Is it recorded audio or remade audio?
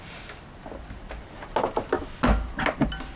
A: recorded